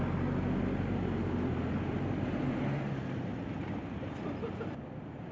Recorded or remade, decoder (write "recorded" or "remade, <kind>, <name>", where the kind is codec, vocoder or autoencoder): recorded